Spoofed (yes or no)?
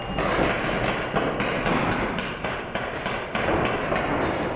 no